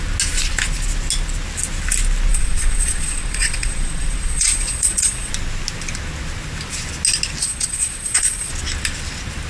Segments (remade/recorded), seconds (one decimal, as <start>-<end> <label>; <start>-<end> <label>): 0.0-2.3 recorded; 2.3-5.3 remade; 5.3-7.4 recorded; 7.4-8.5 remade; 8.5-9.5 recorded